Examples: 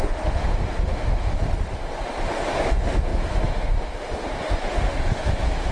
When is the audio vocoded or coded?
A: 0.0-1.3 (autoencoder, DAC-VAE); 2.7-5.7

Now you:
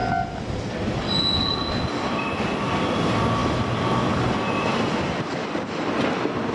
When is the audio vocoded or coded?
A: 1.6-2.2 (vocoder, BigVGAN v2); 3.4-5.9

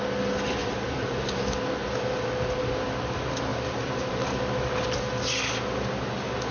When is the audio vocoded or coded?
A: 0.6-1.4 (vocoder, BigVGAN v2); 3.5-4.4

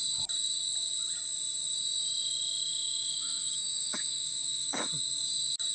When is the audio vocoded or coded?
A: 2.7-4.9 (autoencoder, DAC-VAE)